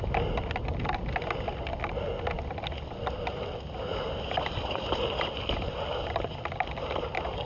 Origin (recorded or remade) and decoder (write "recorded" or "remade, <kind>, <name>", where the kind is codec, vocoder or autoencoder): recorded